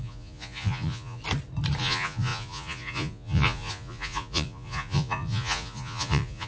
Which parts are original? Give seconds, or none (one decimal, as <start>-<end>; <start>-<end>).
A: 1.2-1.8